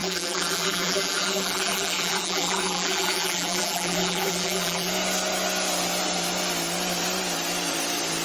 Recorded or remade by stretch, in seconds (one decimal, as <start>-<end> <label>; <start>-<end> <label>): 0.0-4.9 remade; 4.9-8.2 recorded